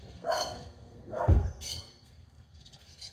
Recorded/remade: remade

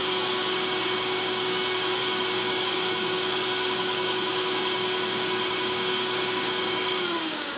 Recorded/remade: remade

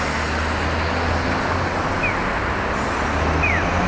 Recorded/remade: recorded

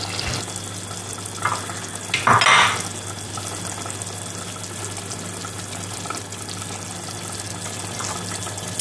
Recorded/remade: recorded